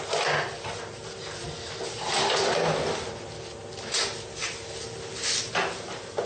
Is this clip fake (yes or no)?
no